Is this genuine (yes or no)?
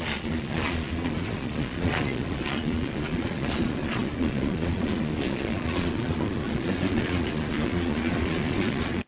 no